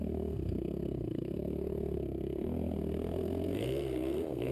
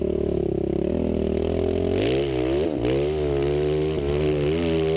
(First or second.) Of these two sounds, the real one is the second